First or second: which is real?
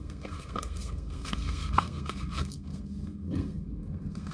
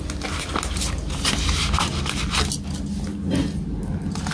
second